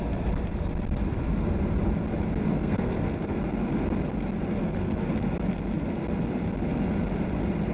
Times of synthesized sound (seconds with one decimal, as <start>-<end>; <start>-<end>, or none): 2.5-3.4; 4.6-5.1